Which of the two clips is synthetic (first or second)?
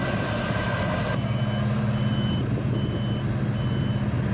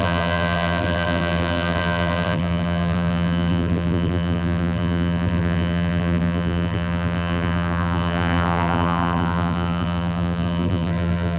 second